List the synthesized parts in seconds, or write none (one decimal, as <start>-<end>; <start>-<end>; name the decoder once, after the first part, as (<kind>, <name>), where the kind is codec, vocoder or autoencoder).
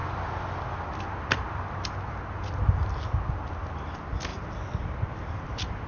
none